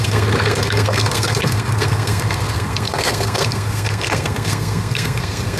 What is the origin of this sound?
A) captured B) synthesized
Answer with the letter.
B